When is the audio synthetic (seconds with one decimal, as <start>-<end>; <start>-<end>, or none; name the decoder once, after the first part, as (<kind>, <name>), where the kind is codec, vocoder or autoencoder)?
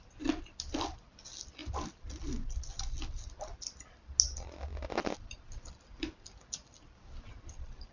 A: none